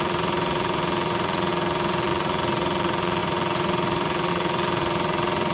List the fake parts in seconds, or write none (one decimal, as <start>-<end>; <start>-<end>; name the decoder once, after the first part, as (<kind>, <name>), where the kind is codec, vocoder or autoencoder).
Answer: 0.0-5.5 (vocoder, BigVGAN v2)